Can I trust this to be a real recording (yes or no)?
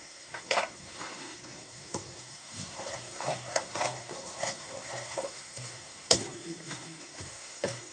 no